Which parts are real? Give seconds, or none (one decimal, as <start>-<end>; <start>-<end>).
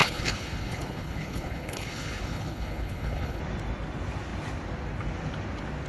3.4-5.9